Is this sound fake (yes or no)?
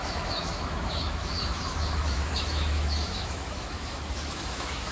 yes